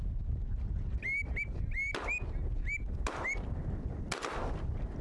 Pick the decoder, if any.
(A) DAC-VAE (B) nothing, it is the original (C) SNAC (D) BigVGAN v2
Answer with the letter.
B